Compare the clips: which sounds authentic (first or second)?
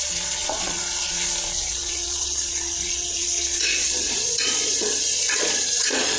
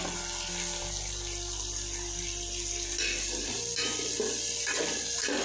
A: second